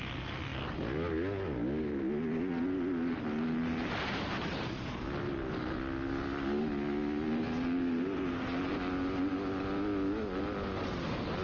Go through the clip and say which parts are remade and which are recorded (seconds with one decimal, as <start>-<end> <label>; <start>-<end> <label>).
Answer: 0.0-11.4 recorded